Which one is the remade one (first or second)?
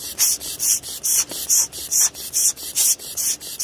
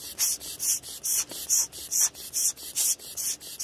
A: first